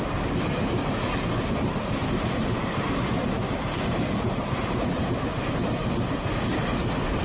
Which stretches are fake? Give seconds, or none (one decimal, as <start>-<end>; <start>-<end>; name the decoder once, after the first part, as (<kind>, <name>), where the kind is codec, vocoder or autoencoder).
0.8-5.1 (vocoder, BigVGAN v2)